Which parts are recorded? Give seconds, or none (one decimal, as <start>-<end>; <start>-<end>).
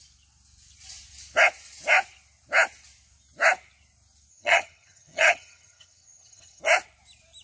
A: 0.0-4.3; 6.6-7.4